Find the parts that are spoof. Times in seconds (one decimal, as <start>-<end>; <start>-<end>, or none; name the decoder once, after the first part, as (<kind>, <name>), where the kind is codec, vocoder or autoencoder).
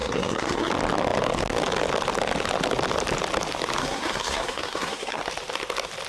0.0-0.7 (codec, SNAC); 3.8-5.2